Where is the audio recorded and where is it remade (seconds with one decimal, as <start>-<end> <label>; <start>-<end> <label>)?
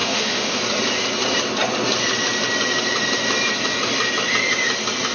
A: 0.0-0.6 remade; 0.6-5.1 recorded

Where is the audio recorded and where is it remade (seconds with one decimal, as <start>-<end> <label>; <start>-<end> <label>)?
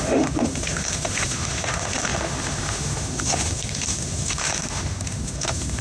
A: 0.0-5.8 remade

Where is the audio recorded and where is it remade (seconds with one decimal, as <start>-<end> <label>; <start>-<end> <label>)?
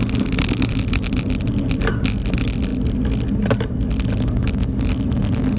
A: 0.0-5.6 recorded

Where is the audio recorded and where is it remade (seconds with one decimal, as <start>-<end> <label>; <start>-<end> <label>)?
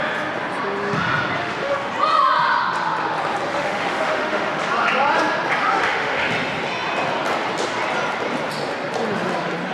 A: 0.0-1.4 recorded; 1.4-1.9 remade; 1.9-3.5 recorded; 3.5-4.6 remade; 4.6-5.6 recorded; 5.6-6.3 remade; 6.3-9.7 recorded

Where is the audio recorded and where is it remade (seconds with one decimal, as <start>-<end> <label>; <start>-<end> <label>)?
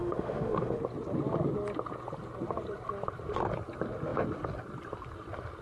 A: 0.0-0.8 remade; 0.8-5.6 recorded